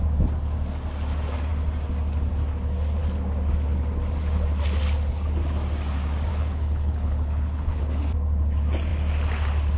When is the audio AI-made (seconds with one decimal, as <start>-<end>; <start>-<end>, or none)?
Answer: 6.3-7.8